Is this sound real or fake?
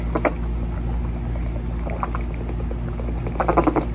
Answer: real